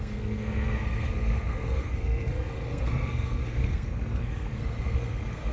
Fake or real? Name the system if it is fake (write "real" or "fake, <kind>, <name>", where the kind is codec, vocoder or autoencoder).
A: fake, codec, SNAC